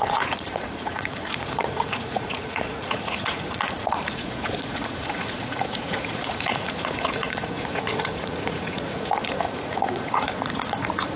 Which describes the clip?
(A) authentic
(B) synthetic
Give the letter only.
B